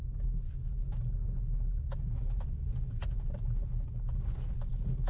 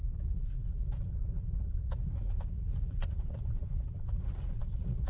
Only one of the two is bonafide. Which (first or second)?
first